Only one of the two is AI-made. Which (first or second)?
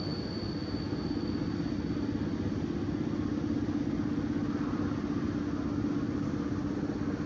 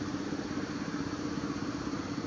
second